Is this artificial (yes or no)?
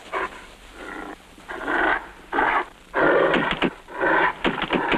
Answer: no